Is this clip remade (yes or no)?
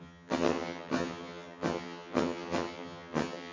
yes